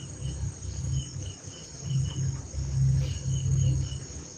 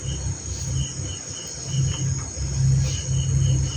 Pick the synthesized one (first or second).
first